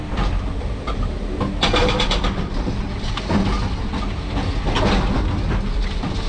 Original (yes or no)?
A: yes